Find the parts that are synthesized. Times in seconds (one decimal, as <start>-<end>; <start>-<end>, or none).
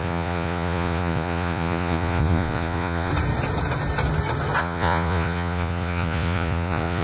0.0-3.1; 4.6-7.0